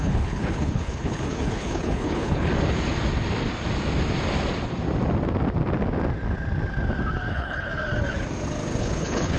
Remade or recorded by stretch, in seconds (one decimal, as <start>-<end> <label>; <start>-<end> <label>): 0.0-2.5 remade; 2.5-7.3 recorded; 7.3-7.7 remade; 7.7-8.8 recorded; 8.8-9.4 remade